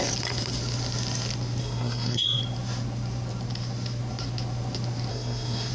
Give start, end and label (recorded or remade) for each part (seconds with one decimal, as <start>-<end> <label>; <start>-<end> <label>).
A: 0.0-1.6 recorded; 1.6-2.4 remade; 2.4-5.1 recorded; 5.1-5.7 remade